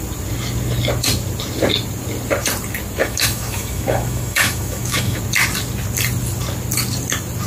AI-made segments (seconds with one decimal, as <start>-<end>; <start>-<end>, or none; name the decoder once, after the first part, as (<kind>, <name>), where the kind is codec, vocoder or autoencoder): 3.0-5.2 (autoencoder, DAC-VAE)